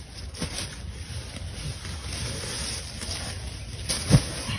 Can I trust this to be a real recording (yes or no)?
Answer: yes